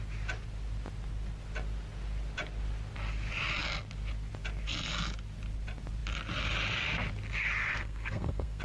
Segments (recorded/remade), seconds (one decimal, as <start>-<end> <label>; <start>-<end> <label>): 0.0-7.7 recorded; 7.7-8.6 remade